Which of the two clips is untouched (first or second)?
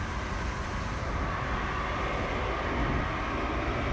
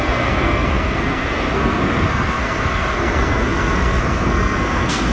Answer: first